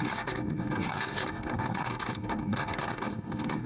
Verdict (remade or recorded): remade